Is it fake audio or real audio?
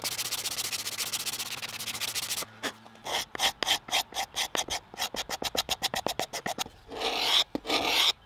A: real